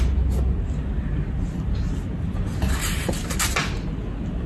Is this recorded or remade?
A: recorded